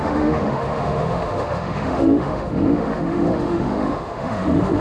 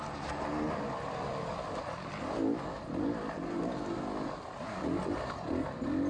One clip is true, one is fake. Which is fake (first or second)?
first